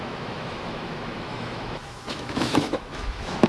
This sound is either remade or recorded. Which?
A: remade